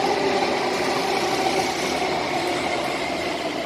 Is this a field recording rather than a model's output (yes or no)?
yes